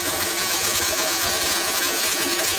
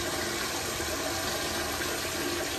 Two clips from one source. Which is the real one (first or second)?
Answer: second